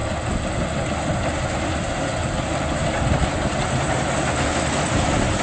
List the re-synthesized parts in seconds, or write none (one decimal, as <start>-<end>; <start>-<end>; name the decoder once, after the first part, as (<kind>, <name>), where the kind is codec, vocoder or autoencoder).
2.2-4.1 (vocoder, BigVGAN v2)